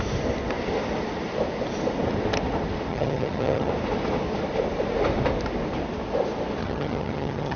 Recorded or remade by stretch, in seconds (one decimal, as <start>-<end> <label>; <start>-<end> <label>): 0.0-2.9 recorded; 2.9-3.7 remade; 3.7-6.6 recorded; 6.6-7.6 remade